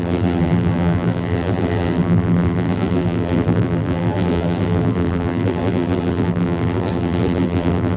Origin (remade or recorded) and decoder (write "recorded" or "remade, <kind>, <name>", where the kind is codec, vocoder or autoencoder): remade, vocoder, BigVGAN v2